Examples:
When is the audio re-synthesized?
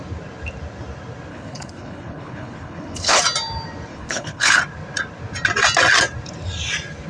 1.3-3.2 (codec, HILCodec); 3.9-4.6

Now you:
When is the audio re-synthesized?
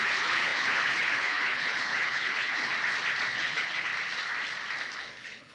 0.0-2.7 (codec, HILCodec); 3.3-3.9; 5.0-5.5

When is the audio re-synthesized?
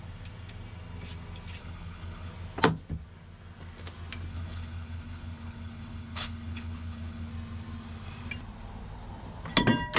1.6-2.3 (codec, HILCodec); 4.3-7.3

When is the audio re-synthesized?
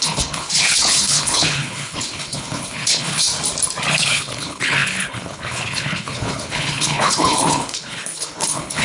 0.0-3.3 (codec, HILCodec); 3.9-8.8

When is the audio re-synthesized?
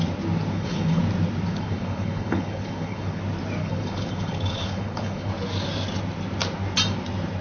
0.5-1.0 (codec, HILCodec); 1.5-3.2; 3.6-5.3